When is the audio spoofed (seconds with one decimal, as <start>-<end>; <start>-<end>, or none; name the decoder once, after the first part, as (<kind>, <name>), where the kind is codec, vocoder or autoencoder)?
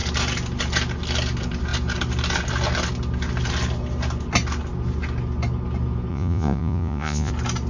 6.1-7.3 (vocoder, Vocos)